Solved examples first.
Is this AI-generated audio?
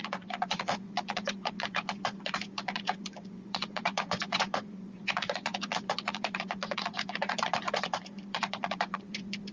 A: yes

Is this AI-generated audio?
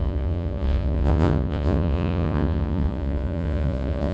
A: yes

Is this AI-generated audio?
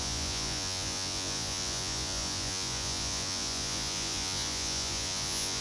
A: yes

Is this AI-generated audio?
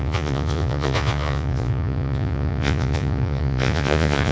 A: yes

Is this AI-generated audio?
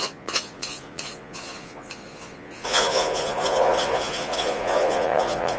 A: yes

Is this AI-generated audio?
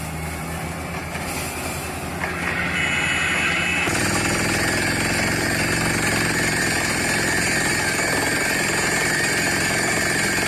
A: no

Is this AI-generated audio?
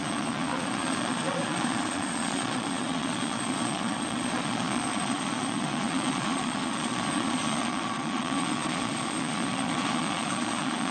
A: yes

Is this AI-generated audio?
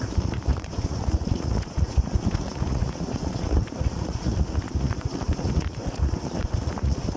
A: yes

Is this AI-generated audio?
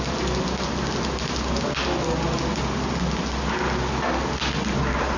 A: no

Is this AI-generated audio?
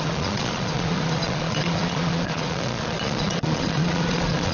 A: yes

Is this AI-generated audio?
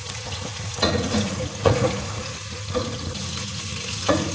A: yes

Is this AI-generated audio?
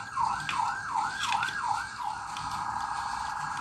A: no